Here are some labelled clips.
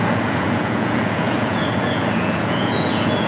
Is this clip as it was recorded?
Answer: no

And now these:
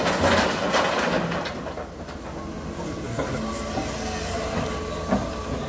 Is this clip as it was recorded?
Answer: yes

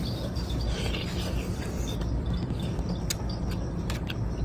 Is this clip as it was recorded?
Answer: yes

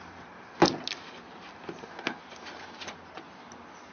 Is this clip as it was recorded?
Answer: yes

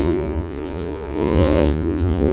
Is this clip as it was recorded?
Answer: no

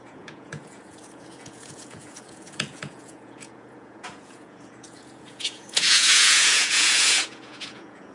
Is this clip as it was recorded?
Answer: no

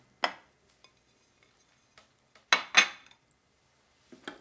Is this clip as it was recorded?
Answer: yes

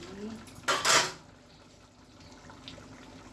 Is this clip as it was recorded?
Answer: yes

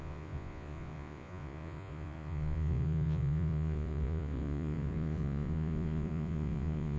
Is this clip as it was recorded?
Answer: no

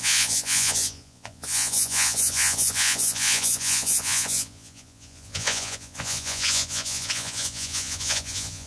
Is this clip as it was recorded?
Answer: no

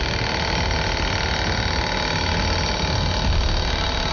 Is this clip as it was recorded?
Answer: yes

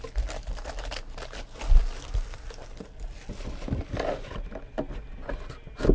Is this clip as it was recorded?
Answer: yes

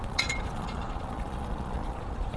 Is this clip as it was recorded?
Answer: no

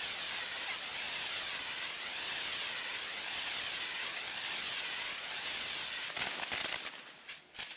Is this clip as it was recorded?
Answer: yes